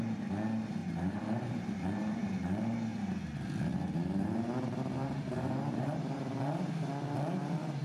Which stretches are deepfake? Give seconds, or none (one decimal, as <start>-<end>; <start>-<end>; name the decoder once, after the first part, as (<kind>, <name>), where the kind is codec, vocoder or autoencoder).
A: 0.8-1.6 (vocoder, BigVGAN v2); 5.0-6.7